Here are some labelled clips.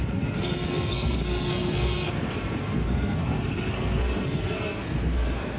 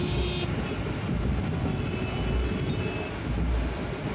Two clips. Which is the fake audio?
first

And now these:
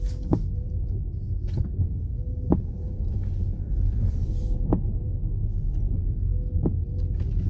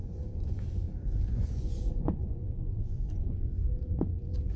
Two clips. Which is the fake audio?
second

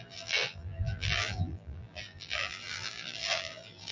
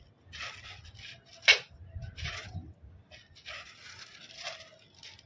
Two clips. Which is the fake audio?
first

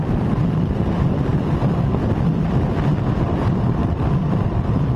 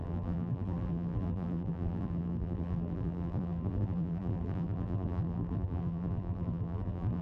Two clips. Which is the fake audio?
second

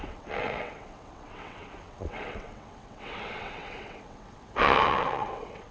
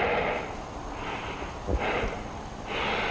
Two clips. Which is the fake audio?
first